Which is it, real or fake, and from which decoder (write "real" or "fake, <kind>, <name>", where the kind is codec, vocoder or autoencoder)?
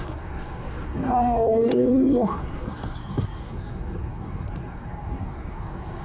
fake, codec, SNAC